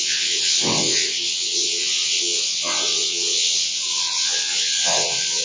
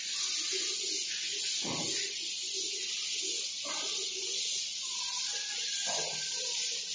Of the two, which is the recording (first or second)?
second